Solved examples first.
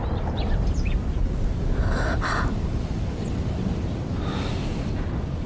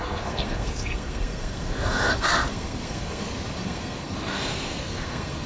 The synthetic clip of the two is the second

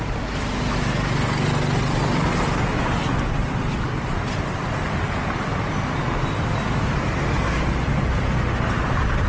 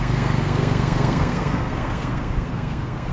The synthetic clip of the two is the second